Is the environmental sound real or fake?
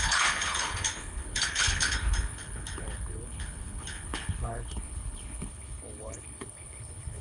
fake